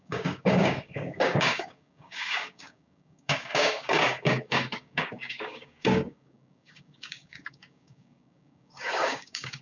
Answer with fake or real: fake